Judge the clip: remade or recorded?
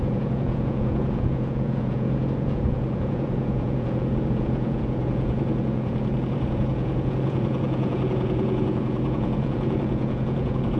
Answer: remade